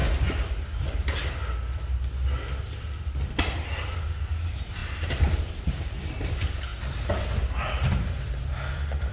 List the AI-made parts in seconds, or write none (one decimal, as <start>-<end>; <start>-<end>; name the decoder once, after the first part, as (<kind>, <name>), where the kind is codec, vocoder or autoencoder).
4.1-6.7 (vocoder, BigVGAN v2); 7.5-9.1